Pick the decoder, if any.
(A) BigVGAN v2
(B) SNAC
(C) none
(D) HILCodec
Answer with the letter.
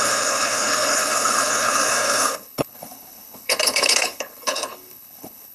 D